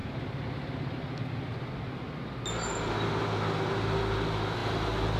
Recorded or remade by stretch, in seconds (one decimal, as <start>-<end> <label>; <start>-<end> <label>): 0.0-5.2 recorded